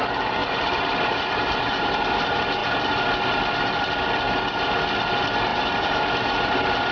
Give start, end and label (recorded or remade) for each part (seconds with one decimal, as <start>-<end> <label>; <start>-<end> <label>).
0.0-0.4 recorded; 0.4-2.1 remade; 2.1-5.5 recorded; 5.5-6.9 remade